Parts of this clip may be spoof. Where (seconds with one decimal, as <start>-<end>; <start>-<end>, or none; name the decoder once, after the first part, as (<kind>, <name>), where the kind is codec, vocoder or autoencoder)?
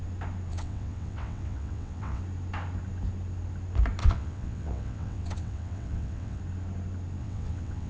0.5-2.2 (vocoder, WaveNeXt); 4.0-6.4; 7.2-7.9